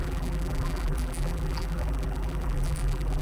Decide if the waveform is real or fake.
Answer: fake